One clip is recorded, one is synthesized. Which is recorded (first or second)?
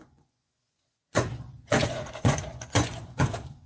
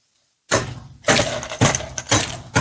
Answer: second